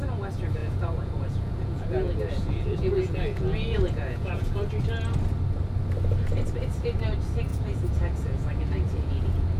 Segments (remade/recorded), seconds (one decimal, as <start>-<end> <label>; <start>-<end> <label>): 0.0-0.6 recorded; 0.6-4.7 remade; 4.7-7.5 recorded; 7.5-9.6 remade